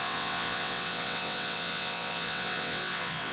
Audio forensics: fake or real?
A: fake